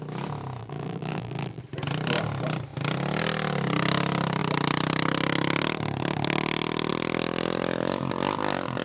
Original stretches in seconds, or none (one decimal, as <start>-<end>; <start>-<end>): 0.0-0.6; 1.6-8.8